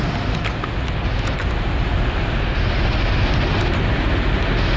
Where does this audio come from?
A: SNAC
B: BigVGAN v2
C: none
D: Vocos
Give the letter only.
C